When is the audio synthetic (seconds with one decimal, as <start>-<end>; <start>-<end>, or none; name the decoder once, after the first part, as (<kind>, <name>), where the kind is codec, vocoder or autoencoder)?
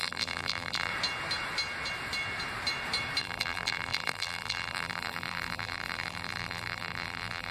0.0-0.9 (vocoder, BigVGAN v2); 3.2-7.5